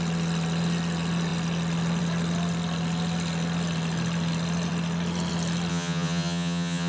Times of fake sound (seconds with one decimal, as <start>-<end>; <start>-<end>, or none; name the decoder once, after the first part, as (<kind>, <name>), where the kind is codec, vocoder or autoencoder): 5.7-6.9 (vocoder, HiFi-GAN)